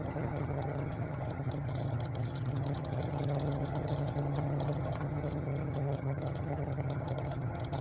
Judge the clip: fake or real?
fake